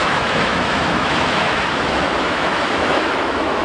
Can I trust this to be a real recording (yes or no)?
no